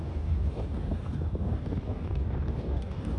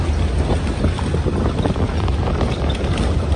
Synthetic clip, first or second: first